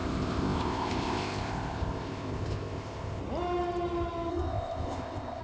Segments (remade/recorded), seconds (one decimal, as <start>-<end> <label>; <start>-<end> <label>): 0.0-3.2 remade; 3.2-4.3 recorded; 4.3-5.4 remade